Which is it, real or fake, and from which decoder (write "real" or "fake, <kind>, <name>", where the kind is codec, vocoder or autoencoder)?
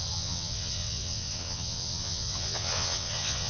fake, vocoder, WaveNeXt